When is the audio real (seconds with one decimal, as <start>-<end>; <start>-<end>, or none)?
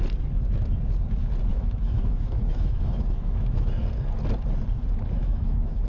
0.0-1.5; 3.7-5.2